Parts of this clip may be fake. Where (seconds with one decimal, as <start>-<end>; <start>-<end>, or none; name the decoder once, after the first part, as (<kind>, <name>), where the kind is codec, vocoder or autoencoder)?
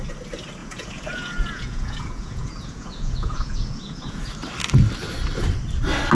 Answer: 0.6-4.3 (vocoder, Vocos)